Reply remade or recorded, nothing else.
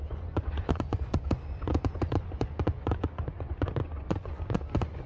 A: remade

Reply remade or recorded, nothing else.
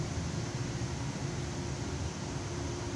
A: recorded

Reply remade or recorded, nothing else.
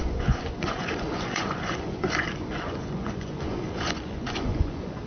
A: remade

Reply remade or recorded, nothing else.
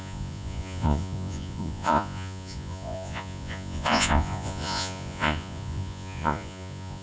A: remade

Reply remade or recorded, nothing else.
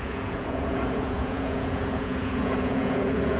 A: remade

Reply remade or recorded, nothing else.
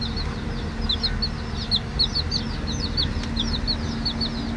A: recorded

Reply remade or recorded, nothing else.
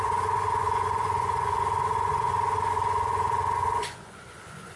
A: remade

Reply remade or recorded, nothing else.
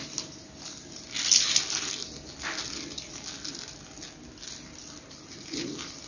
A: recorded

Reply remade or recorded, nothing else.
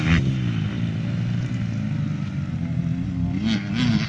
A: recorded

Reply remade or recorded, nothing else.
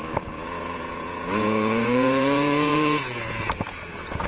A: remade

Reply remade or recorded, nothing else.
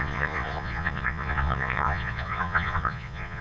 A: remade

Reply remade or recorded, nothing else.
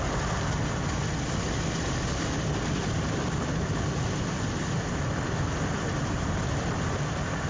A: recorded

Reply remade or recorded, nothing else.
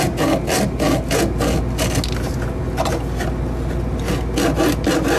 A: recorded